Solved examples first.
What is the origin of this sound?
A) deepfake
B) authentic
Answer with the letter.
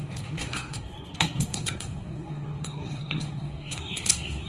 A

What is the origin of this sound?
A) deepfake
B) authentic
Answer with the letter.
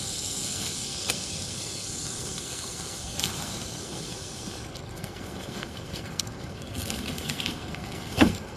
A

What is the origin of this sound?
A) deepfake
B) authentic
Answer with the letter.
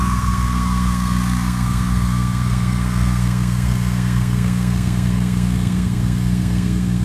A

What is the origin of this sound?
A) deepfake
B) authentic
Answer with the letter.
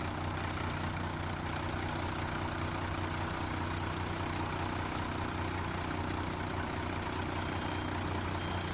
B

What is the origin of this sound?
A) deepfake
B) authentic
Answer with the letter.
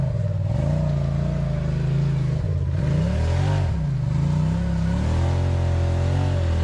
B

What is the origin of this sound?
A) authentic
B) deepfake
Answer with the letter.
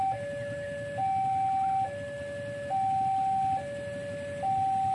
A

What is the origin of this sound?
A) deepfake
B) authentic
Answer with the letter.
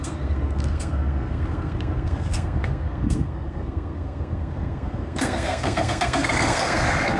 A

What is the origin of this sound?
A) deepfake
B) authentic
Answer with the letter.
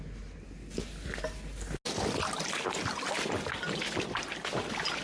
B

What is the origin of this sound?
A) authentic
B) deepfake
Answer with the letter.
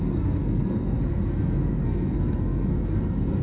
B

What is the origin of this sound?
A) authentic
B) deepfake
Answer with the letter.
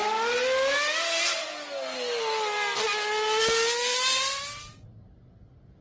A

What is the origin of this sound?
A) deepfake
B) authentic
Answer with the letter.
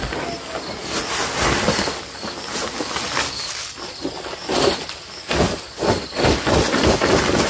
B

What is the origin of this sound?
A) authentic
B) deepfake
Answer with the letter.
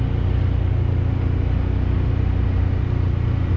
A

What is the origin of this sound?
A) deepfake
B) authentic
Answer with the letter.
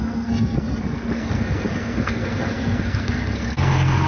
A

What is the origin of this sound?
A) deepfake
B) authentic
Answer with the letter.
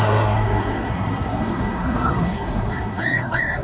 A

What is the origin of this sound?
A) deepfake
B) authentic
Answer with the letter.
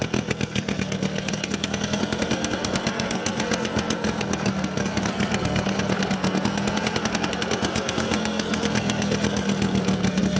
A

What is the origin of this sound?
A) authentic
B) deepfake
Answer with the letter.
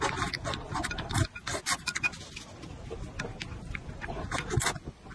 A